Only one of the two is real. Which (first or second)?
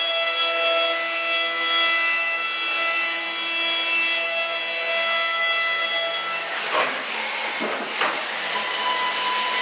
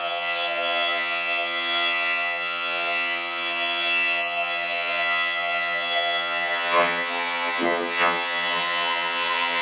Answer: first